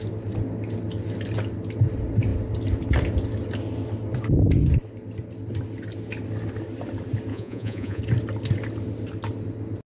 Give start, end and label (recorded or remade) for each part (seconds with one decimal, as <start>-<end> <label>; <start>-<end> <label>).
0.0-7.3 recorded; 7.3-8.0 remade; 8.0-9.9 recorded